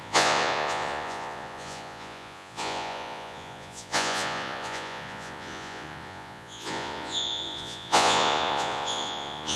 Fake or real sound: fake